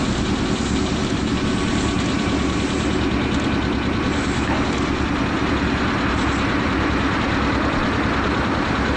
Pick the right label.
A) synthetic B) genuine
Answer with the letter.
B